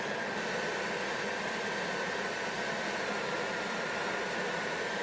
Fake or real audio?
real